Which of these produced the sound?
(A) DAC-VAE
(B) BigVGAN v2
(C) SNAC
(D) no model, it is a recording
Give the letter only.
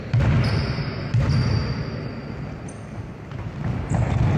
D